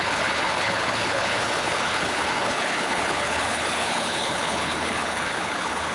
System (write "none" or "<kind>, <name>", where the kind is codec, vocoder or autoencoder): codec, HILCodec